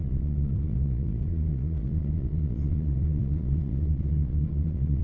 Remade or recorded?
remade